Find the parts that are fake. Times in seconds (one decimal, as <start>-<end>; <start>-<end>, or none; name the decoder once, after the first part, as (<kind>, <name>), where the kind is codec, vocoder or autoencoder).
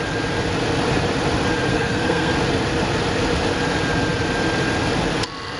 1.7-2.3 (codec, SNAC)